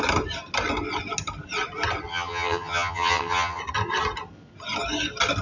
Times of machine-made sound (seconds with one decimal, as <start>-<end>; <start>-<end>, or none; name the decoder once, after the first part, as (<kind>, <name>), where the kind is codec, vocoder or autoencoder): 2.1-3.6 (vocoder, HiFi-GAN)